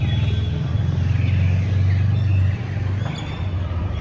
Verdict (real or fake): real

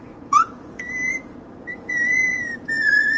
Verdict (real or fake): fake